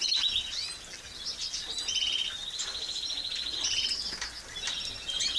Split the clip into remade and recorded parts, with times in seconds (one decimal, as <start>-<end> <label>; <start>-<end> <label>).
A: 0.0-5.4 recorded